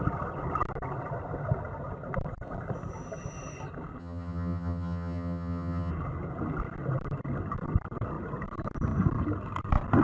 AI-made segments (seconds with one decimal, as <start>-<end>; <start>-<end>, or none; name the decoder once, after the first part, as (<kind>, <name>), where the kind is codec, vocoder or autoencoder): 4.0-5.9 (vocoder, HiFi-GAN)